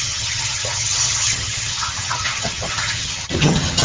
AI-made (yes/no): yes